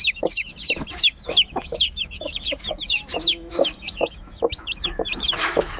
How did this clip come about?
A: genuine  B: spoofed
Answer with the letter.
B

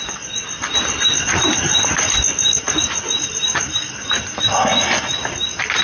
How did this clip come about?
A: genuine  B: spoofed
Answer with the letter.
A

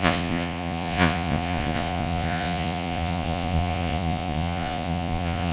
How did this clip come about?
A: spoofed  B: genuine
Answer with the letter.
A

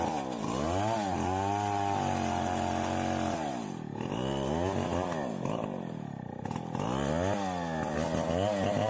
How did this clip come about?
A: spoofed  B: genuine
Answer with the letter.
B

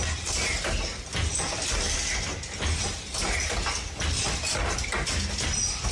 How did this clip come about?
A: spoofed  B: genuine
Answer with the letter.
B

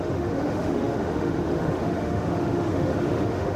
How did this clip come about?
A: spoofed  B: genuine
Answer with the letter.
A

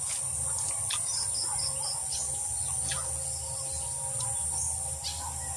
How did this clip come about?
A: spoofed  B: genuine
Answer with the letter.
B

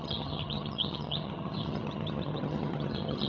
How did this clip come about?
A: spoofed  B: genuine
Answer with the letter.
A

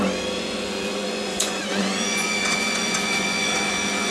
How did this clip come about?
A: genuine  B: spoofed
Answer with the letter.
B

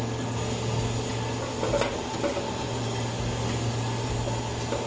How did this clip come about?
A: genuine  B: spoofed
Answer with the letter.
A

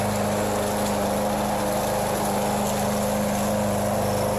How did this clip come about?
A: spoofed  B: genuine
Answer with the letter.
B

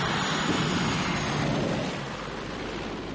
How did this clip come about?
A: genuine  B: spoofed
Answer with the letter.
A